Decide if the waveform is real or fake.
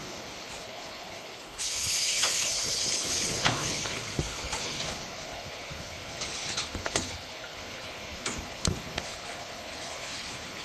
fake